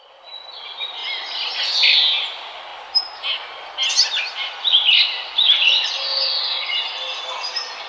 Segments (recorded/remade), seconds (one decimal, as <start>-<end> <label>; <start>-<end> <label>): 0.0-7.9 recorded